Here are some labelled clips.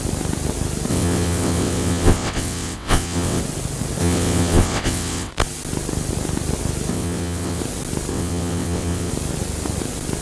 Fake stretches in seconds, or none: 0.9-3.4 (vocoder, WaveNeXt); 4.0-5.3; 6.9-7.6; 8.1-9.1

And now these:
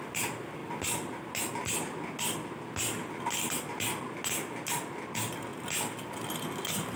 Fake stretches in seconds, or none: none

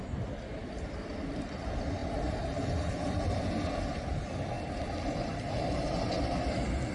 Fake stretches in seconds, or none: none